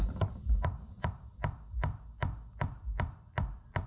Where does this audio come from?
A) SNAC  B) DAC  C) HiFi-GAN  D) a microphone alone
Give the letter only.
D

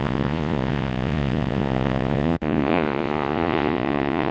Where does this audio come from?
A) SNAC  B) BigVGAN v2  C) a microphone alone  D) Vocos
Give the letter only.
D